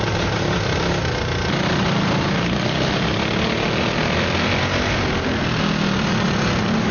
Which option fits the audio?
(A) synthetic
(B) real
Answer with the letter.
B